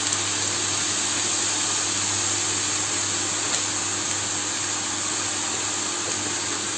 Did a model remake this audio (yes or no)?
no